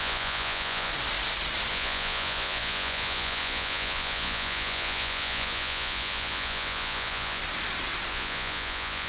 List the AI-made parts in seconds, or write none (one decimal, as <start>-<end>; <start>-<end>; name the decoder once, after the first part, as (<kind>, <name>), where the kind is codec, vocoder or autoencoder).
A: 0.0-0.9 (vocoder, Vocos); 1.7-7.4; 8.1-9.1